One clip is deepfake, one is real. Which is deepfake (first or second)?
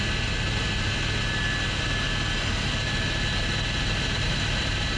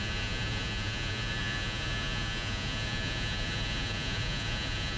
second